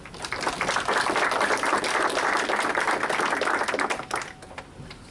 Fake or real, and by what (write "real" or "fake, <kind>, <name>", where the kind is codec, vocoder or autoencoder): real